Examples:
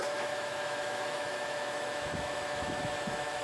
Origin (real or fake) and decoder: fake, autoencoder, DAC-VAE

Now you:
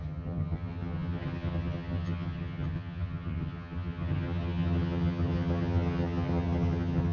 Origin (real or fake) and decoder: fake, vocoder, HiFi-GAN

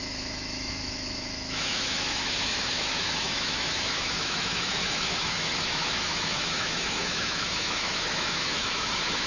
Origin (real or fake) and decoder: fake, autoencoder, DAC-VAE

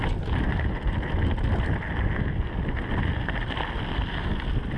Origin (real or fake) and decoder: real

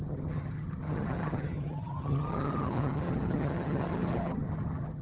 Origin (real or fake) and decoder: fake, vocoder, HiFi-GAN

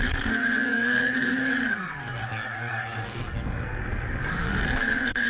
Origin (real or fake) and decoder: fake, codec, SNAC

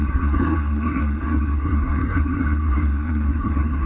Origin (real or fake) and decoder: fake, codec, SNAC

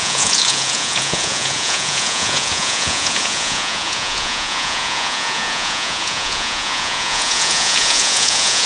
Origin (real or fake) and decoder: fake, vocoder, Vocos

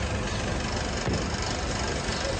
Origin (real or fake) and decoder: real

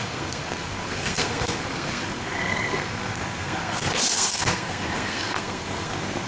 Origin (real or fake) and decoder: fake, codec, SNAC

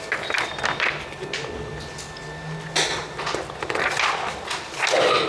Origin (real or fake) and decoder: real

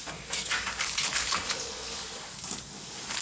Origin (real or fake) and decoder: fake, codec, DAC